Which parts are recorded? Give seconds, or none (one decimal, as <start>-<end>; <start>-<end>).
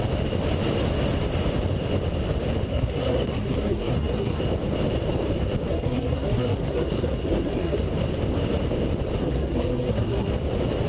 0.0-2.7; 4.4-5.7; 7.8-9.2; 10.3-10.9